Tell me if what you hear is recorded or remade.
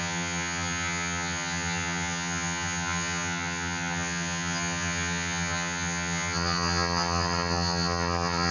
remade